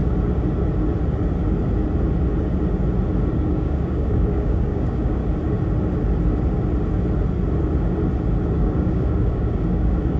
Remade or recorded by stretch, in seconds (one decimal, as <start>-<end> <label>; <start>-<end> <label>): 0.0-3.3 recorded; 3.3-5.2 remade; 5.2-8.5 recorded; 8.5-10.2 remade